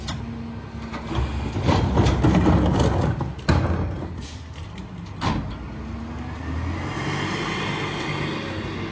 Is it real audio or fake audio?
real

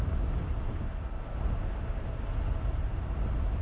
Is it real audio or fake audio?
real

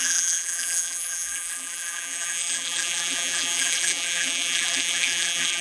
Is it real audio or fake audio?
fake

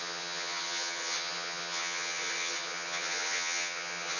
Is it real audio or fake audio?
fake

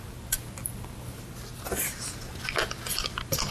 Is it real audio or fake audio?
real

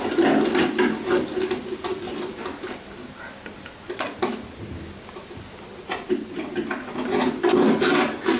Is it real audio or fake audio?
real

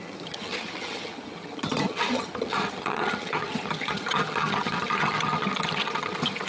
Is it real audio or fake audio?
fake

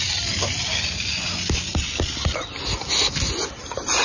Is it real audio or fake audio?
real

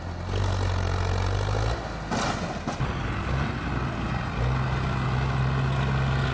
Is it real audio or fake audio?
real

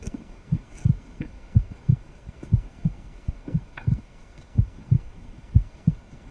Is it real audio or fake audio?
fake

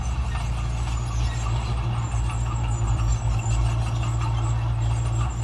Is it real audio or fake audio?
real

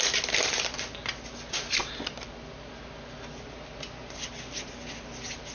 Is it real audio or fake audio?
real